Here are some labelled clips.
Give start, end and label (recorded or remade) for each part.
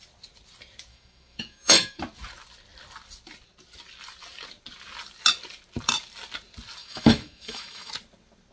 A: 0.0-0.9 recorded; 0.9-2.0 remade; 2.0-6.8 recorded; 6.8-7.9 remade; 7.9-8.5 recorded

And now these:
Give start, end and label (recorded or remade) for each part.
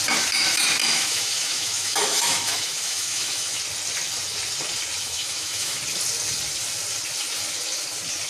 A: 0.0-0.8 recorded; 0.8-3.6 remade; 3.6-5.0 recorded; 5.0-5.8 remade; 5.8-8.3 recorded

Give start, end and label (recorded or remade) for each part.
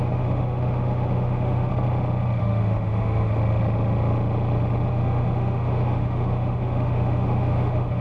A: 0.0-1.7 remade; 1.7-2.4 recorded; 2.4-3.3 remade; 3.3-4.9 recorded; 4.9-8.0 remade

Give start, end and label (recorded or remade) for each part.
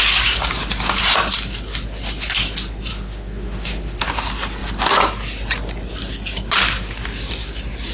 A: 0.0-2.9 recorded; 2.9-4.0 remade; 4.0-7.9 recorded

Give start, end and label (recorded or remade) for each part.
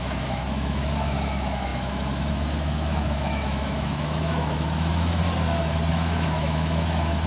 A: 0.0-5.2 remade; 5.2-5.9 recorded; 5.9-7.3 remade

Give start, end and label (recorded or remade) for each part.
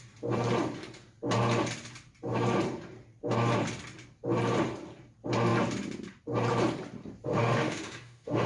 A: 0.0-7.3 recorded; 7.3-8.5 remade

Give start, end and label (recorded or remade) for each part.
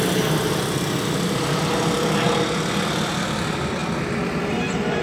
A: 0.0-5.0 recorded